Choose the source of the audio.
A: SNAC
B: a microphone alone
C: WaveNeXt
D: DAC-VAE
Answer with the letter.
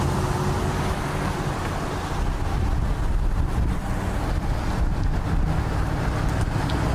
B